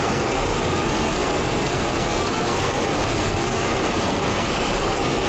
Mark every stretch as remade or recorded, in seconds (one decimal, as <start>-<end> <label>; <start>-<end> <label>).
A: 0.0-5.3 remade